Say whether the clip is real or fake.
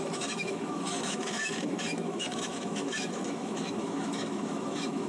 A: fake